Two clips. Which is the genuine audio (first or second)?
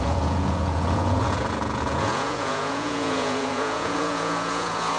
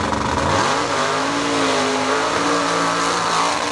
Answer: second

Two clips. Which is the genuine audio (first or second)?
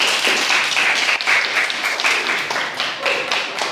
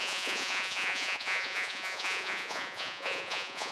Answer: first